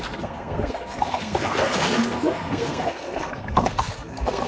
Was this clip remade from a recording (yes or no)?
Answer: yes